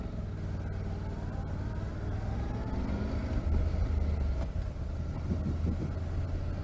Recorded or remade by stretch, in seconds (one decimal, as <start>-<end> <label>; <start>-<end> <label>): 0.0-6.6 recorded